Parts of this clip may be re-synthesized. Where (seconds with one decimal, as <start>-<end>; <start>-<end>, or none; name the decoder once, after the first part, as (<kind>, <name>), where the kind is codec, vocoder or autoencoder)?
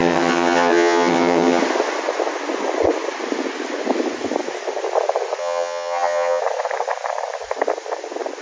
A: 0.0-1.6 (vocoder, HiFi-GAN); 5.4-6.4